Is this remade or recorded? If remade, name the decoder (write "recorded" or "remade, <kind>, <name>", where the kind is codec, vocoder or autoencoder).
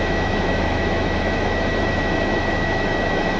remade, autoencoder, DAC-VAE